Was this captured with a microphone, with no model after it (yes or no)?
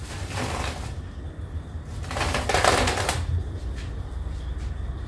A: no